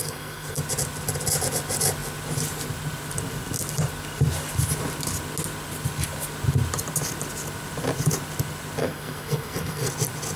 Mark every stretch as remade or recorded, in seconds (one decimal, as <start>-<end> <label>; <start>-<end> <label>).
0.0-0.6 remade; 0.6-8.8 recorded; 8.8-9.9 remade; 9.9-10.4 recorded